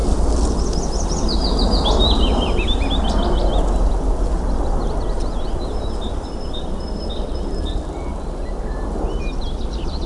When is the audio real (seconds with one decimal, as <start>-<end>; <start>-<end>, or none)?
0.0-10.1